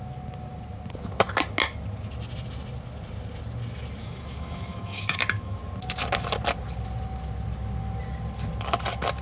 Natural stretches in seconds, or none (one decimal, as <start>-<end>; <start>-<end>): 0.0-4.0; 5.6-9.2